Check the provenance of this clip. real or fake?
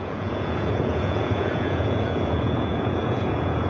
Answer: fake